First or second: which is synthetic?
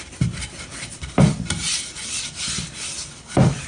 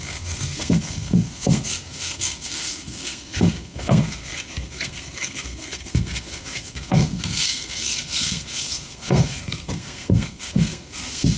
second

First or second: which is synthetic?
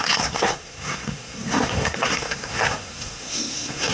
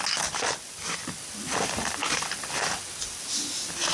first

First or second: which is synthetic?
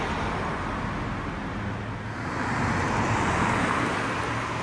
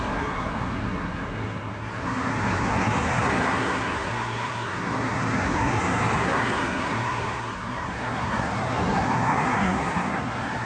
second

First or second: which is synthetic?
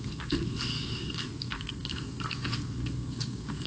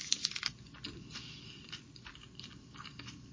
first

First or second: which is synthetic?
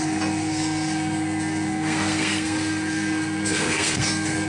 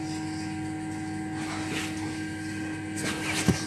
first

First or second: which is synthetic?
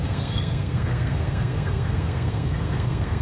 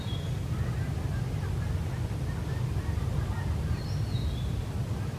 first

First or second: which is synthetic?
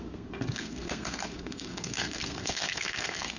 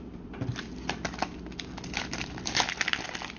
first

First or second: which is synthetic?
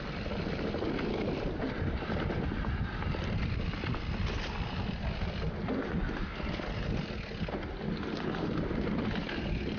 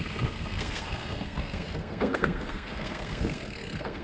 second